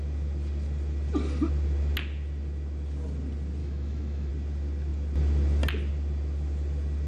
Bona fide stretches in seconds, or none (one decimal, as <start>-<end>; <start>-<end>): 0.0-3.6; 4.3-7.1